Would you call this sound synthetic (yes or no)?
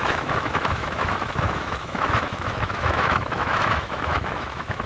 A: yes